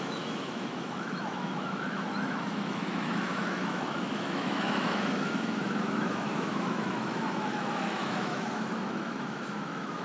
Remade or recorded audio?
remade